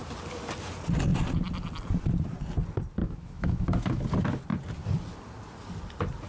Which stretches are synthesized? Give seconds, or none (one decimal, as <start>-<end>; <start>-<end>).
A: 3.0-4.0